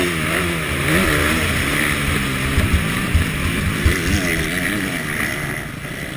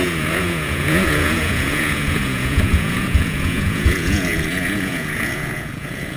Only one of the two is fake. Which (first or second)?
second